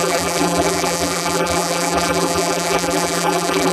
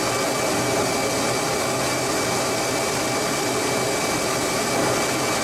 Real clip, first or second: second